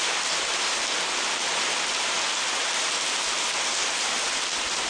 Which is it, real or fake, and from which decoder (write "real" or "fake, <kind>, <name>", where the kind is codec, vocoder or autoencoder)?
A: real